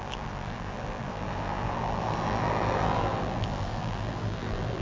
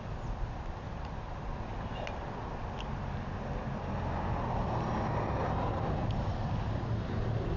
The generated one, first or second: first